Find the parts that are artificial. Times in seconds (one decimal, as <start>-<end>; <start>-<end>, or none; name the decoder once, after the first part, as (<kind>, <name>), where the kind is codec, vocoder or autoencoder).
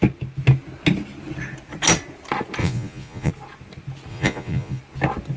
2.6-3.3 (vocoder, Vocos); 4.1-4.8